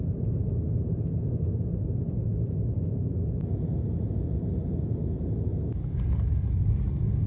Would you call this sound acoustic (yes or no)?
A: yes